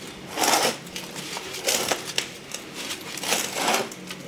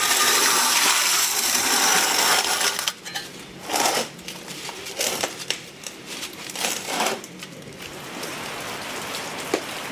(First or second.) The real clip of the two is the first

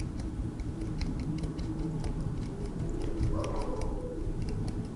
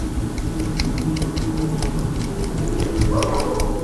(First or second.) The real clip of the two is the second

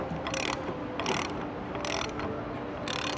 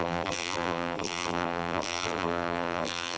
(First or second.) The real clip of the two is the first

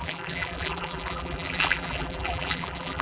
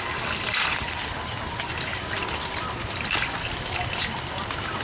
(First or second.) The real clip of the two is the second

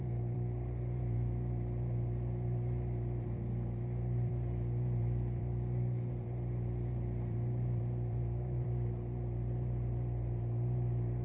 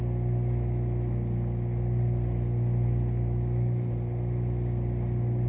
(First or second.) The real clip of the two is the second